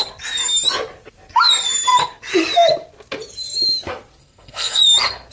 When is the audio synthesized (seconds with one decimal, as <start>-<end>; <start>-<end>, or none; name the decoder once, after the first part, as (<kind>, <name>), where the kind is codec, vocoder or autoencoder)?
4.2-4.8 (codec, SNAC)